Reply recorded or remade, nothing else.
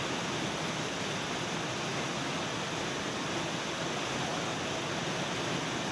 recorded